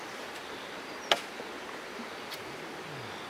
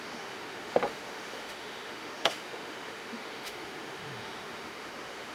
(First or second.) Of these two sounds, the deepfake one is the second